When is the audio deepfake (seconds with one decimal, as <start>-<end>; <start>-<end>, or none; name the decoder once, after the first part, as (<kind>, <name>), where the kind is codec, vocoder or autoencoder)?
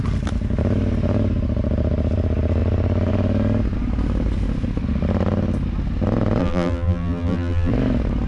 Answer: 6.4-7.7 (vocoder, BigVGAN v2)